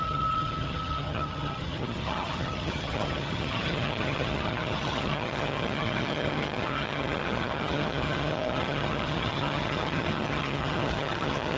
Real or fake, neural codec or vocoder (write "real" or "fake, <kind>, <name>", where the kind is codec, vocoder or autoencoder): fake, vocoder, HiFi-GAN